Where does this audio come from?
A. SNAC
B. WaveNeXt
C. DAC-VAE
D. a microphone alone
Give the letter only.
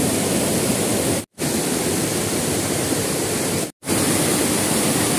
D